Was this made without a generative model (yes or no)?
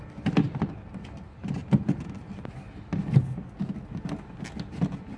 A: yes